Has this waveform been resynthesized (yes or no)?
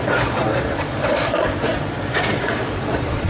yes